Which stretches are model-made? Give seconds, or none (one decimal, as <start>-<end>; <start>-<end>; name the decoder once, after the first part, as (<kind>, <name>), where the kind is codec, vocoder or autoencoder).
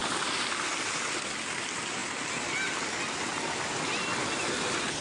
none